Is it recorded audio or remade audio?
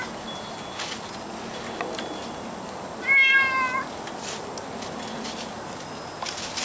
recorded